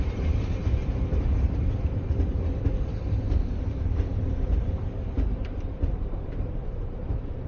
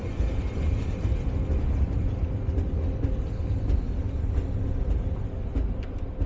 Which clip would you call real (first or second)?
second